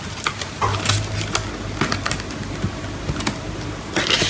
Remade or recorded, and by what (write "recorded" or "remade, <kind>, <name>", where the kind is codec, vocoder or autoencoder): recorded